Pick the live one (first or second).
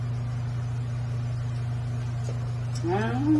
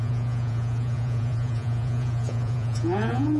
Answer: first